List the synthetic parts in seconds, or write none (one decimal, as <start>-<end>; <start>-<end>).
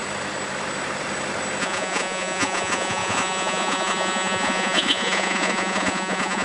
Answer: 1.6-6.4